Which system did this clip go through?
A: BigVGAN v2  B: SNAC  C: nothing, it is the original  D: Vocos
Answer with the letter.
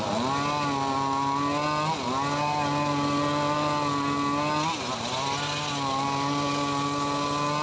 C